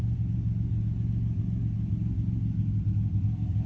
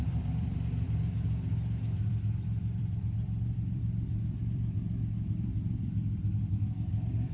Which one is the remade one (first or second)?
second